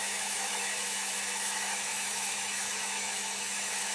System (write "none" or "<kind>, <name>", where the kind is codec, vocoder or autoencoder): autoencoder, DAC-VAE